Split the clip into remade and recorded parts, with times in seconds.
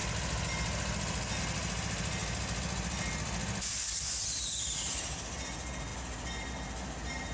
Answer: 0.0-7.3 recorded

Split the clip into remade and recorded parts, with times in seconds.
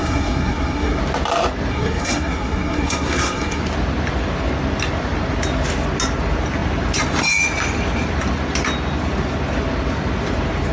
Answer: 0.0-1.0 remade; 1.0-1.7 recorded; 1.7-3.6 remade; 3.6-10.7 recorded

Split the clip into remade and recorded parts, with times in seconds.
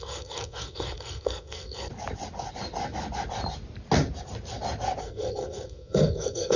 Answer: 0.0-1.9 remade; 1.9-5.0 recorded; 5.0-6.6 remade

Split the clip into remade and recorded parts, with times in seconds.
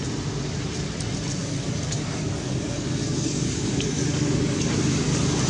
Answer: 0.0-1.4 recorded; 1.4-4.7 remade; 4.7-5.5 recorded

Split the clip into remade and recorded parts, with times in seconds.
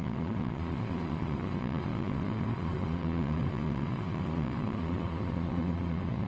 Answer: 0.0-6.3 remade